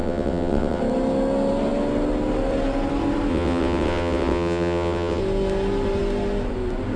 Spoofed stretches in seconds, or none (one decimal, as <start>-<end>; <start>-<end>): 0.0-0.8; 3.3-5.2